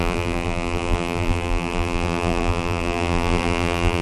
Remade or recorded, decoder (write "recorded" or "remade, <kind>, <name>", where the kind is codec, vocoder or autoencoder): remade, vocoder, BigVGAN v2